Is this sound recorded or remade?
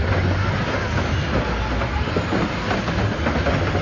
recorded